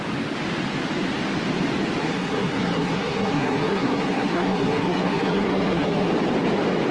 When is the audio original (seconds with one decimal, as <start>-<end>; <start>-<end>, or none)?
0.0-2.0; 6.1-6.9